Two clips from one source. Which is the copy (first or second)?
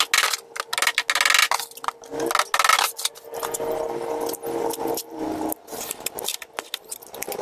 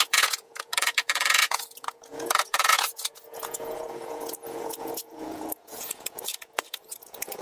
second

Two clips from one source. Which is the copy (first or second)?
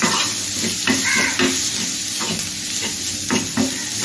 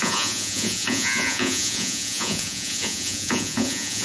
second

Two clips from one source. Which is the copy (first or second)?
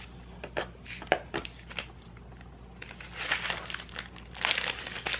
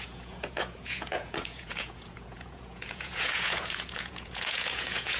second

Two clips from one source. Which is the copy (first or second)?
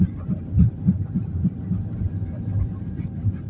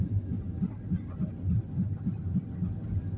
first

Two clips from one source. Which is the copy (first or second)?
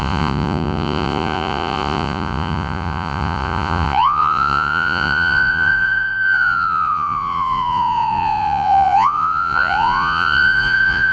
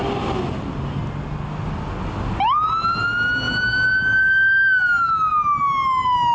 first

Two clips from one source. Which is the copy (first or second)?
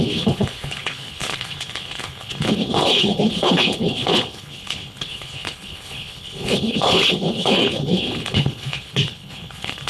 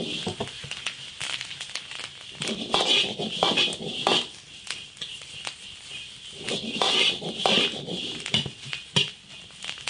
first